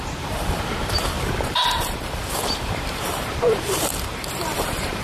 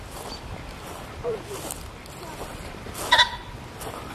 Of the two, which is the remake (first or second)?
first